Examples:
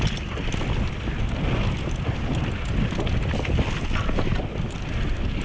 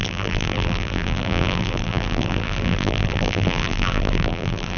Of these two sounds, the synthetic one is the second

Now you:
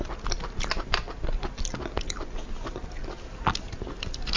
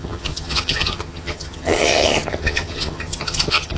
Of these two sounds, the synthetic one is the second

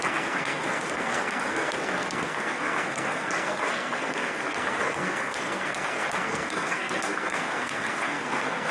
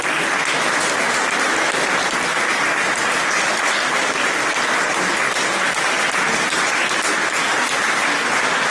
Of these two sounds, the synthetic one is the first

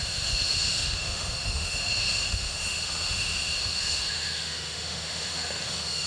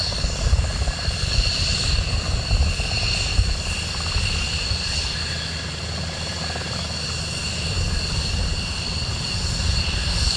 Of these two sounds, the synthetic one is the first